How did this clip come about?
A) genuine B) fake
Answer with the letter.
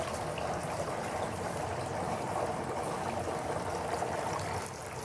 A